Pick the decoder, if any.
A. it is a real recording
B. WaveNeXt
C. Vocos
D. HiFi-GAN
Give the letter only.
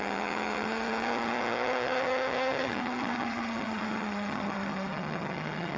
D